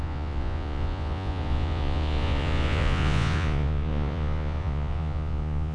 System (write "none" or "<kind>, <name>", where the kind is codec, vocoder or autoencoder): vocoder, Vocos